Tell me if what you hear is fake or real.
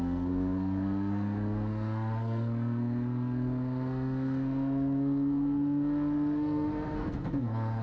fake